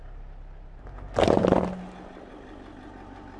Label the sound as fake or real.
real